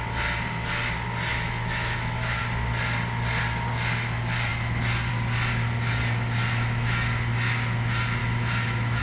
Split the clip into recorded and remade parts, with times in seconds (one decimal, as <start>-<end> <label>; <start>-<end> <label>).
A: 0.0-1.3 recorded; 1.3-2.4 remade; 2.4-8.2 recorded; 8.2-9.0 remade